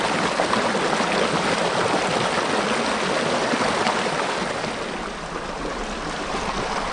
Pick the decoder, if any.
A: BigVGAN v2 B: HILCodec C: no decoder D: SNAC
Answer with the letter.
C